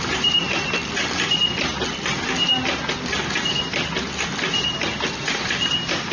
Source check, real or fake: real